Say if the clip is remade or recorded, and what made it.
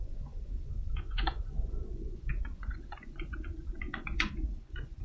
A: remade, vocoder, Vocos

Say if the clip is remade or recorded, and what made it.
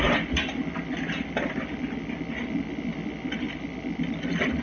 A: recorded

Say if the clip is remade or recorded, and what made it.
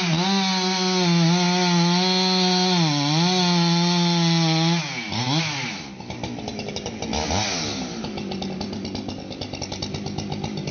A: recorded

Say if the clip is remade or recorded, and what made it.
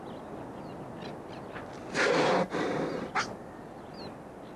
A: recorded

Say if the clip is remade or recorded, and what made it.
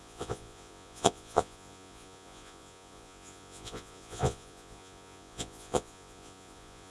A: remade, vocoder, Vocos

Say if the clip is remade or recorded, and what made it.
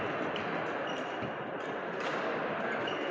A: recorded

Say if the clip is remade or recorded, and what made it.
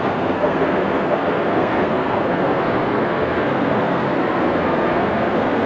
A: remade, codec, SNAC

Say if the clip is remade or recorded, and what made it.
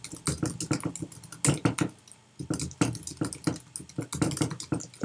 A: recorded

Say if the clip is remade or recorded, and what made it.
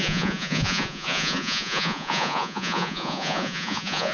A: remade, vocoder, Vocos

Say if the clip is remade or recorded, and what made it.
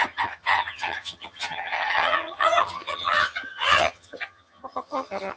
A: remade, vocoder, HiFi-GAN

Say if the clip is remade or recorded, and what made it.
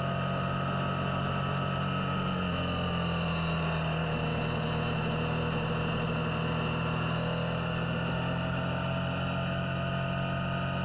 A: recorded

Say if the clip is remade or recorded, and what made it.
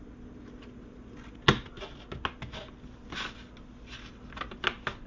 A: recorded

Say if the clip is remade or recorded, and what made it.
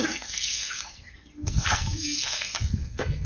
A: remade, codec, SNAC